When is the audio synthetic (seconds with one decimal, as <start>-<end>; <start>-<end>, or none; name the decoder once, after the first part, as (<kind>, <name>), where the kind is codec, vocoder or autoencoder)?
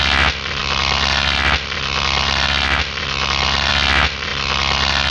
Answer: 0.6-3.7 (vocoder, BigVGAN v2); 4.3-5.1